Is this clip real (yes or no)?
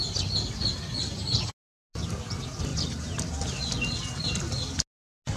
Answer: yes